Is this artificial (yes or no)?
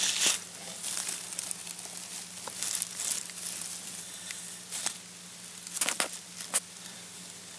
no